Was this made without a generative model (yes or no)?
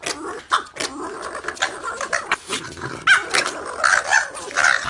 yes